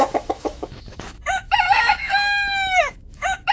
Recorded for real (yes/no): no